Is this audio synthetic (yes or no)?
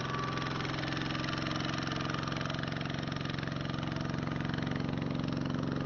no